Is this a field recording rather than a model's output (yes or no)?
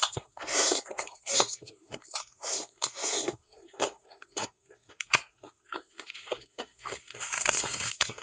no